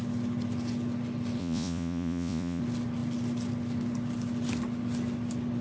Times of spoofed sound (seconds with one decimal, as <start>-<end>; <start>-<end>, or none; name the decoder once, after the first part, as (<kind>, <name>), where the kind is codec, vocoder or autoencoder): 1.4-2.6 (vocoder, Vocos)